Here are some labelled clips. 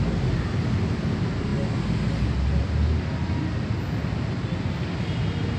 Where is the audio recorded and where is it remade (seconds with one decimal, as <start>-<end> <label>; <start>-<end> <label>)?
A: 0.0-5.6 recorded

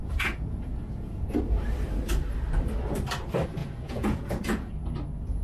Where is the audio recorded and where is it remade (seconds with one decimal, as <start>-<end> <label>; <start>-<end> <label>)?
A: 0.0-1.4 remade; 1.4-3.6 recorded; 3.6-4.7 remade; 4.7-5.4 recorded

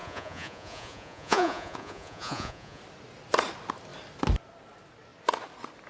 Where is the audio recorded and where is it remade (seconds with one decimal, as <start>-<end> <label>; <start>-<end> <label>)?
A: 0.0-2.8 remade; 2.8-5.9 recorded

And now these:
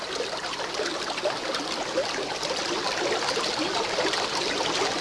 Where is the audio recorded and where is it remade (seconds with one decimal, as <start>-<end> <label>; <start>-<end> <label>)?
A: 0.0-5.0 recorded

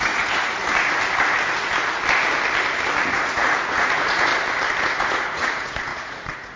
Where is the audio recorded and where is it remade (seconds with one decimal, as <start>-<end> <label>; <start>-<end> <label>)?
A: 0.0-0.6 remade; 0.6-3.1 recorded; 3.1-4.3 remade; 4.3-4.8 recorded; 4.8-6.6 remade

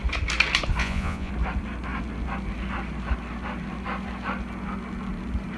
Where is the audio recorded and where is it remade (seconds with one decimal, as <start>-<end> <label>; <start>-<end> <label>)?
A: 0.0-0.8 recorded; 0.8-1.3 remade; 1.3-5.6 recorded

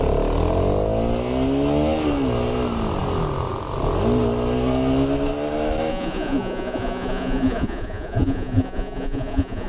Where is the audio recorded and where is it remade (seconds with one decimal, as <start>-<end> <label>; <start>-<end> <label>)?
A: 0.0-5.9 recorded; 5.9-9.7 remade

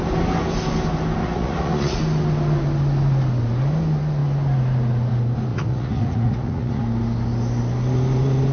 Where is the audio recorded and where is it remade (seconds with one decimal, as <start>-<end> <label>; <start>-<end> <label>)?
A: 0.0-1.2 recorded; 1.2-2.0 remade; 2.0-5.5 recorded; 5.5-6.8 remade; 6.8-8.5 recorded